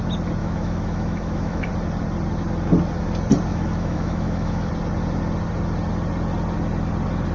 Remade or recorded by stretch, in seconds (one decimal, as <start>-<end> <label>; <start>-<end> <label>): 0.0-0.4 recorded; 0.4-1.7 remade; 1.7-3.5 recorded; 3.5-4.7 remade; 4.7-7.3 recorded